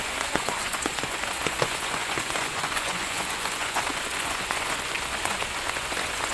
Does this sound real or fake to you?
fake